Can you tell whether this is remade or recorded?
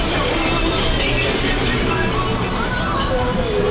remade